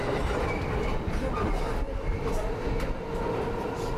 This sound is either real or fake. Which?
real